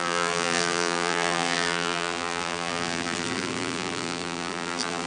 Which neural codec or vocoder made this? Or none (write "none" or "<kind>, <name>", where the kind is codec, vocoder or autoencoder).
vocoder, BigVGAN v2